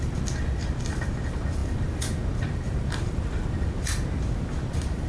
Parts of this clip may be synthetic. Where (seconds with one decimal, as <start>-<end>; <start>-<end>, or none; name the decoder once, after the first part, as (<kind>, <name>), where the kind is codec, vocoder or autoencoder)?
none